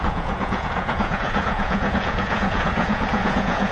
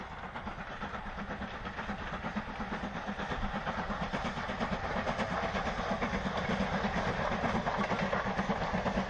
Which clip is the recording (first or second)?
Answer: second